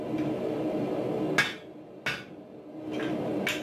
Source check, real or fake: real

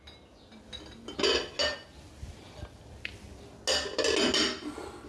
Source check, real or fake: real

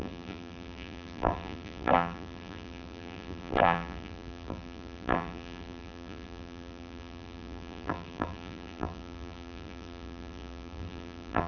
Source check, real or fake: fake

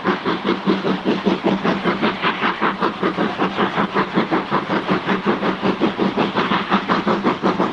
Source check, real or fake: fake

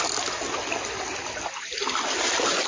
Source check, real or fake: real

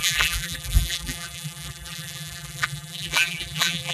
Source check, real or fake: fake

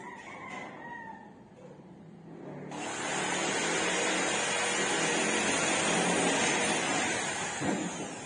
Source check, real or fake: real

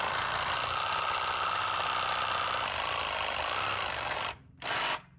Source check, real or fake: real